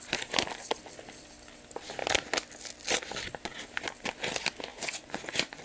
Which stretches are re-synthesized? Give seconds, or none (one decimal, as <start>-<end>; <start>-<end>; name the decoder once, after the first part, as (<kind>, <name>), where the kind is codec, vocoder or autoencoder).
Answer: 4.7-5.6 (vocoder, Vocos)